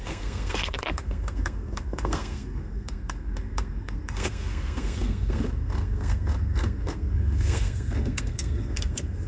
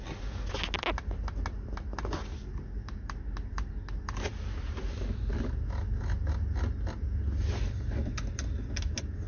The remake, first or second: first